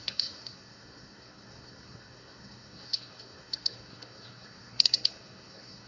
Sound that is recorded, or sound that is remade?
remade